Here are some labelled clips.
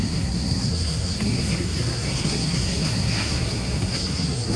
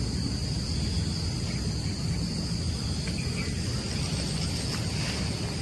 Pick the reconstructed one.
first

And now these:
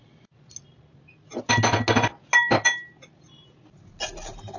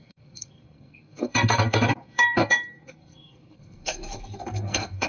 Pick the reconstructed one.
second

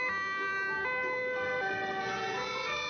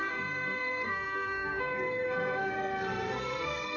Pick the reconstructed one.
second